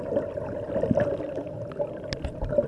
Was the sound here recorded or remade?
recorded